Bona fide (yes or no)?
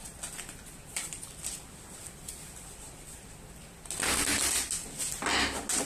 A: yes